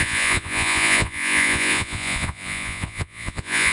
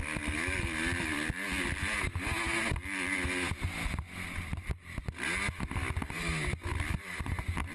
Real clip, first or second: second